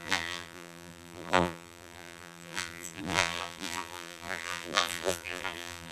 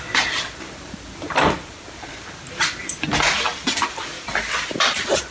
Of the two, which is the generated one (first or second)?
first